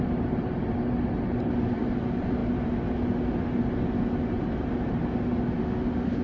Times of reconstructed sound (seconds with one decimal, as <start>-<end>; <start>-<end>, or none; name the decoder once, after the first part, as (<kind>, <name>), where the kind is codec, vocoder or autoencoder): 5.6-6.2 (autoencoder, DAC-VAE)